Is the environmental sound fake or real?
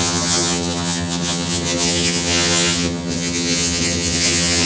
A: fake